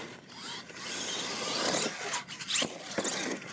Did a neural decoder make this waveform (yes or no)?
no